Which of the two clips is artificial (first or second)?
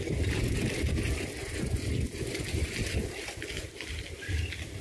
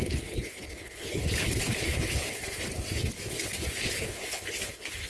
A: second